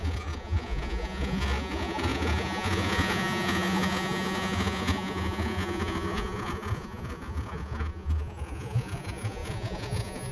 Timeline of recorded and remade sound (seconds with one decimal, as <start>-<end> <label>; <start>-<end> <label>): 0.0-10.3 remade